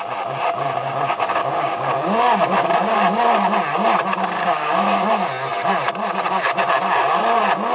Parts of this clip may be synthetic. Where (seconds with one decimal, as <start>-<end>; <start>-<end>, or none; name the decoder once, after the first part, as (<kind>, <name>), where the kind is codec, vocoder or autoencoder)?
1.4-3.2 (codec, DAC); 4.1-5.1